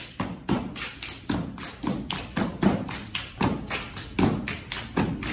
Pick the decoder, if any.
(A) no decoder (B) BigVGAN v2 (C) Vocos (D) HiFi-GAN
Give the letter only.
A